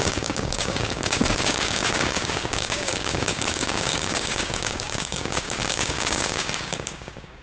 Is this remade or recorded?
remade